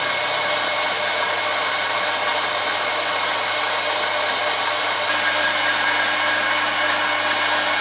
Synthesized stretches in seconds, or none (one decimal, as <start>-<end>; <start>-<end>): none